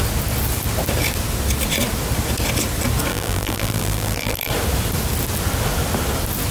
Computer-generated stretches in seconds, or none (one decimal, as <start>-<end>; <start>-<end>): 3.1-4.5